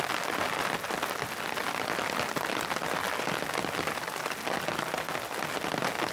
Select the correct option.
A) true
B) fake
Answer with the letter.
A